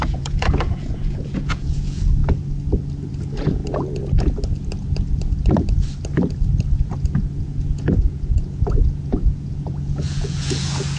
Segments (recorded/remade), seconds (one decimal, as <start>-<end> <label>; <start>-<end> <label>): 0.0-2.2 remade; 2.2-3.1 recorded; 3.1-3.6 remade; 3.6-6.8 recorded; 6.8-11.0 remade